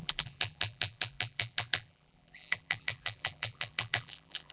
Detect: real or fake fake